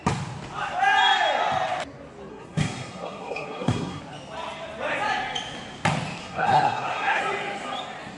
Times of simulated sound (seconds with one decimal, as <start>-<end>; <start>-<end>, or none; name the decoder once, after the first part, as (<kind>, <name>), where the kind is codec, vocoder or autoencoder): 2.3-4.0 (codec, SNAC); 6.2-7.2